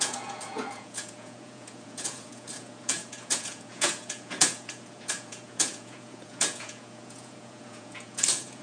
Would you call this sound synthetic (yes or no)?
yes